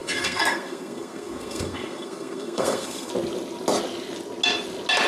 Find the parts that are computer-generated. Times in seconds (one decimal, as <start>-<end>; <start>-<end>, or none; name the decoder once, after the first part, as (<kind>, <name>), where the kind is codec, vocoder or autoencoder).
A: 0.0-3.1 (codec, SNAC)